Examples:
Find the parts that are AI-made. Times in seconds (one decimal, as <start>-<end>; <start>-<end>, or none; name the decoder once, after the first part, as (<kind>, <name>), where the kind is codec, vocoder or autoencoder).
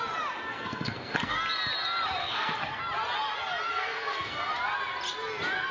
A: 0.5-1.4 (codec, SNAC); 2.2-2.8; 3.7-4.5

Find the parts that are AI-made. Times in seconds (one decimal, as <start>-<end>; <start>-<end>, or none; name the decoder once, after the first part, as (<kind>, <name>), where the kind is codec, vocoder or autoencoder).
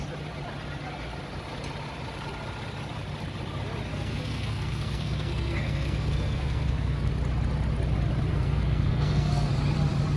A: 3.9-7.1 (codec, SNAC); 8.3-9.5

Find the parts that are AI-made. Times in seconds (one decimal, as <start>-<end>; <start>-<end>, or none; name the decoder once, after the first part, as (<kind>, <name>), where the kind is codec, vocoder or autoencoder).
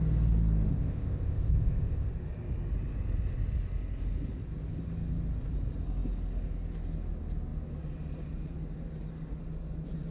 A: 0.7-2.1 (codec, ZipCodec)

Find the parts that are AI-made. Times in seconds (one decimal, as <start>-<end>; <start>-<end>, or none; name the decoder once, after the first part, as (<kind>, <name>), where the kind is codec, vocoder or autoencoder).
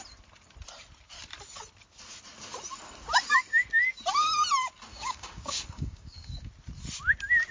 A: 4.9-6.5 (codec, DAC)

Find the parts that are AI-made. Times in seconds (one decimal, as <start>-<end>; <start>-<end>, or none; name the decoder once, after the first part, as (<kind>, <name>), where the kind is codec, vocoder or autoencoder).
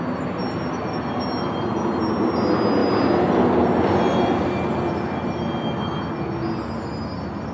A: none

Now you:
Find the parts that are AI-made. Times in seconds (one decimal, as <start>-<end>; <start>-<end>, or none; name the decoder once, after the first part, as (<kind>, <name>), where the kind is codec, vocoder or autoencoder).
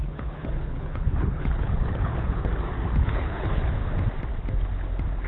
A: 0.0-2.5 (codec, HILCodec); 3.0-3.8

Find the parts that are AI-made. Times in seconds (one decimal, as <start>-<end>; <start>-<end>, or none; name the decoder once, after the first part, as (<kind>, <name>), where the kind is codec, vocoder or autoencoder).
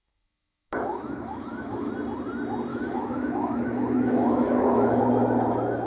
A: 0.0-1.9 (autoencoder, DAC-VAE); 2.7-5.0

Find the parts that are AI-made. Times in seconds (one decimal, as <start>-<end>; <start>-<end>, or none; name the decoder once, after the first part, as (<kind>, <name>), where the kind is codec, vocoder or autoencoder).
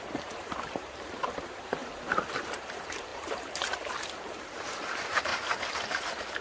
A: 0.0-1.8 (vocoder, BigVGAN v2); 2.4-5.3